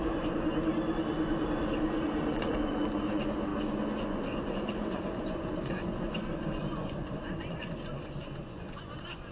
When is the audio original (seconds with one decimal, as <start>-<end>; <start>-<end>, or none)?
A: none